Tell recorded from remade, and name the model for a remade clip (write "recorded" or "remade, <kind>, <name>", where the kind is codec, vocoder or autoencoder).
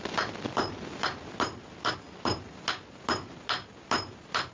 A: recorded